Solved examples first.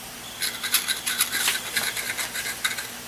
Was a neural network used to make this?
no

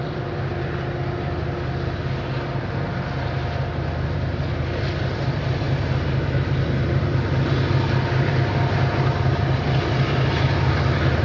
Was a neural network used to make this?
no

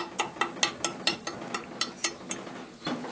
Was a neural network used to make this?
no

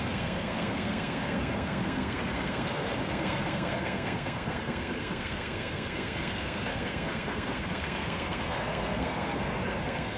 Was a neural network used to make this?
yes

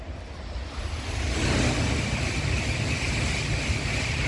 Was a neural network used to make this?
no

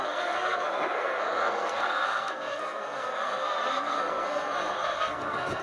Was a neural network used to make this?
yes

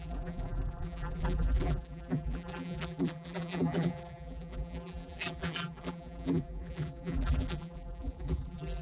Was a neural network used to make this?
yes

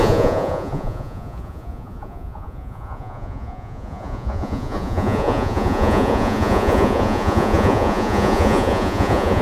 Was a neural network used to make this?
yes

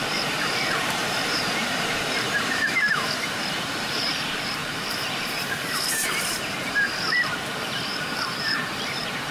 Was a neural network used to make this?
yes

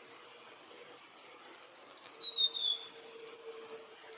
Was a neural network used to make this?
no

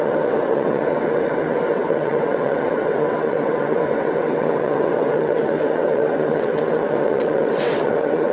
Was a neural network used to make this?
yes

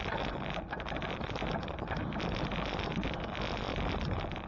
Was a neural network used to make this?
no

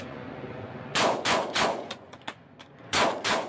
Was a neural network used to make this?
yes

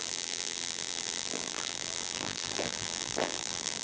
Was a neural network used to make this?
yes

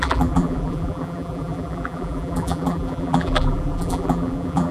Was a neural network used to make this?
yes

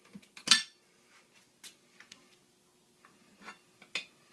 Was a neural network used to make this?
no